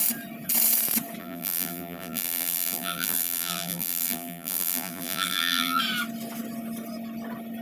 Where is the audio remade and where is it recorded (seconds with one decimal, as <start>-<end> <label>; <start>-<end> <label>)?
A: 0.0-1.2 recorded; 1.2-5.8 remade; 5.8-7.6 recorded